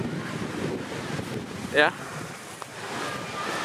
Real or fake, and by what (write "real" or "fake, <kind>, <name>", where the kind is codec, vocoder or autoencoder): real